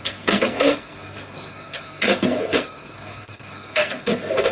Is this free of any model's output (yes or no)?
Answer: no